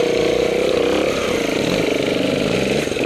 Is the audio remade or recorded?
recorded